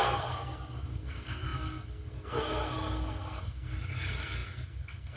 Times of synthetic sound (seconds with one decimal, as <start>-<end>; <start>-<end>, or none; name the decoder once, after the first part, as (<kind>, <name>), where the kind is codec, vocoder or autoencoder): 0.0-5.2 (codec, SNAC)